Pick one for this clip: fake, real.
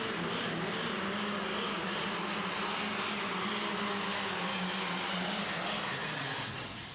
real